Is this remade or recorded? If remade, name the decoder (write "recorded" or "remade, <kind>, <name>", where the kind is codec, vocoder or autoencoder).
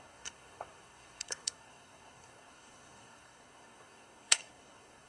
remade, codec, SNAC